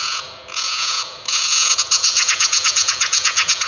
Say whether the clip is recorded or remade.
remade